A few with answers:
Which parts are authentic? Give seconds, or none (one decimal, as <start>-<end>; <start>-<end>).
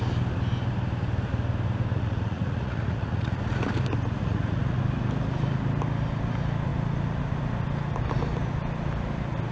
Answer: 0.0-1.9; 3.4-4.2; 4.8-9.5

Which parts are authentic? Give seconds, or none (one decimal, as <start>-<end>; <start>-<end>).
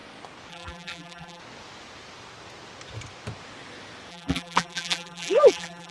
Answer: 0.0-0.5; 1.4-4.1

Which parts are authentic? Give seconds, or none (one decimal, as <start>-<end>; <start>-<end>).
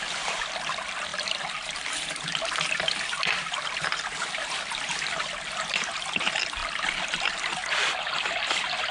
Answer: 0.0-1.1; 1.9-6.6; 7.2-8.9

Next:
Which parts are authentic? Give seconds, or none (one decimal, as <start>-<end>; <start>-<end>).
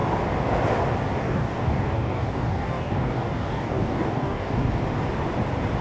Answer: 0.0-1.2; 4.7-5.8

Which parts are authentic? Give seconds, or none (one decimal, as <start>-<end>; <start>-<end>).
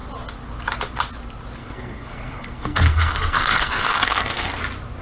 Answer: 0.0-1.6; 4.6-5.0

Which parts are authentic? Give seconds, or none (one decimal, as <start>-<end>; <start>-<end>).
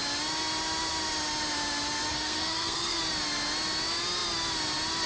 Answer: 0.0-2.1; 3.0-5.1